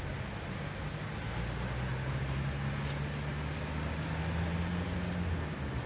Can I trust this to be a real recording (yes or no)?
yes